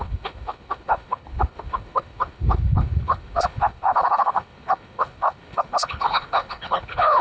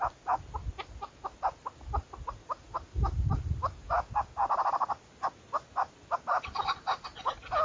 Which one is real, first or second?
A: second